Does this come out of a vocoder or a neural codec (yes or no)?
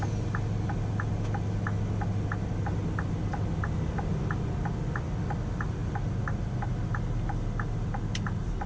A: no